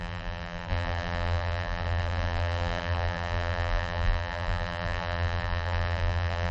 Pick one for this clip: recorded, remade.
remade